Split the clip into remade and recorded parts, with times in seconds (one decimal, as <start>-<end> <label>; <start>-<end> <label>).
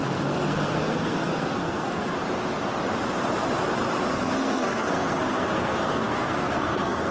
0.0-2.1 remade; 2.1-4.1 recorded; 4.1-7.1 remade